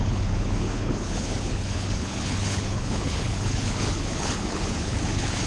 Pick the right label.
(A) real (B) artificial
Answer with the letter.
B